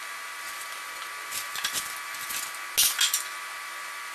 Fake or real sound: real